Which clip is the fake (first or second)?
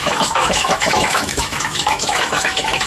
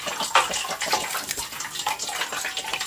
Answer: first